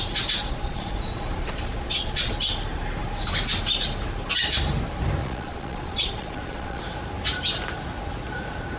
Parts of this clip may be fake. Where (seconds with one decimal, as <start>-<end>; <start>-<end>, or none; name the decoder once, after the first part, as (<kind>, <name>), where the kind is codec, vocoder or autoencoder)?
0.4-2.3 (vocoder, Vocos); 5.2-6.8